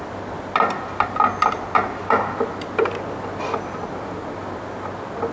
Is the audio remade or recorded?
recorded